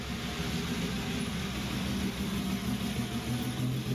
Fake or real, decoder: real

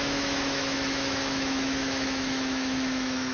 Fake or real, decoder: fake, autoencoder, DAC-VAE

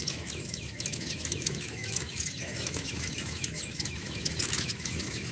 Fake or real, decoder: fake, autoencoder, DAC-VAE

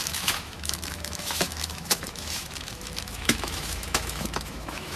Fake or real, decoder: fake, autoencoder, DAC-VAE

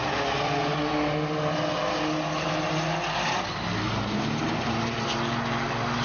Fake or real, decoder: real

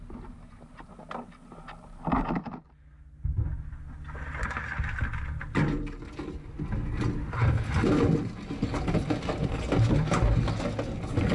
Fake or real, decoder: real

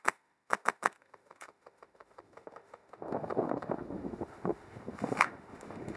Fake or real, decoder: fake, autoencoder, DAC-VAE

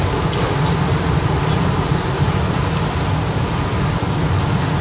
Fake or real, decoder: real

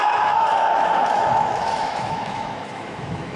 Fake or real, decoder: fake, autoencoder, DAC-VAE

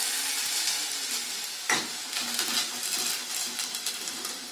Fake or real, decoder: real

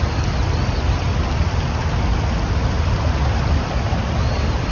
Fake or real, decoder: real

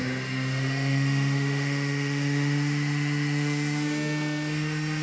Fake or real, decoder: fake, autoencoder, DAC-VAE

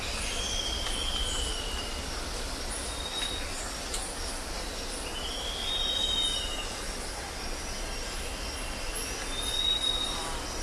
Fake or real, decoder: real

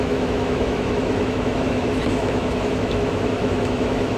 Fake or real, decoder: fake, autoencoder, DAC-VAE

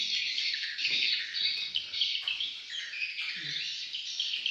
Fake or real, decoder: real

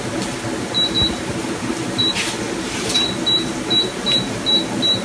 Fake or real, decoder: real